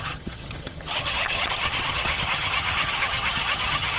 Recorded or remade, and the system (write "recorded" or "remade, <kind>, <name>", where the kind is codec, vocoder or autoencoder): remade, vocoder, HiFi-GAN